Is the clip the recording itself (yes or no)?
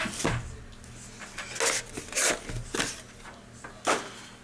yes